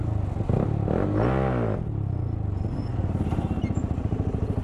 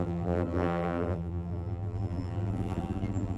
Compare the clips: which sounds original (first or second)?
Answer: first